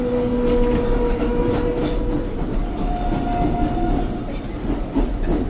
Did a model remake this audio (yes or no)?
no